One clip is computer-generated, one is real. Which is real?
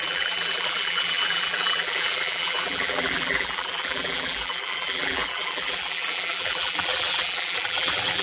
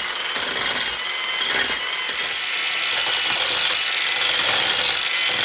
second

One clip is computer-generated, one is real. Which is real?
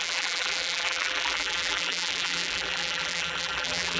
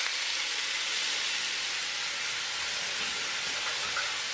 second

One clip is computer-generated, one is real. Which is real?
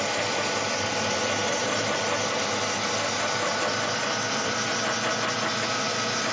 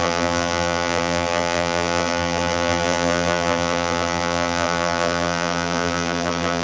first